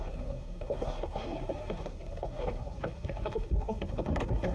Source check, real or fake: fake